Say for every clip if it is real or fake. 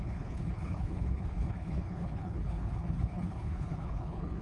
fake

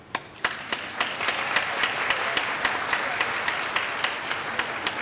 real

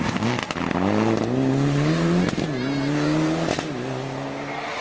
real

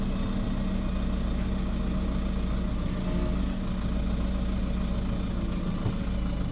real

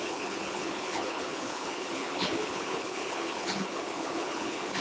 fake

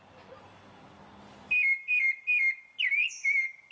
real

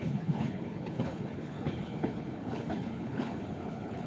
fake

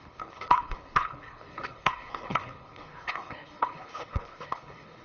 fake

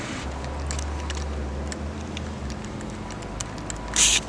real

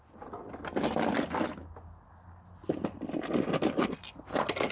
real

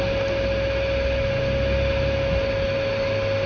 real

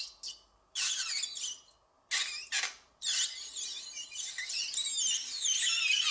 real